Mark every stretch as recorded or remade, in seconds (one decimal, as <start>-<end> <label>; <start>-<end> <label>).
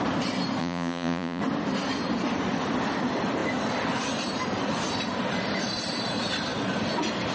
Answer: 0.0-0.6 recorded; 0.6-1.4 remade; 1.4-7.3 recorded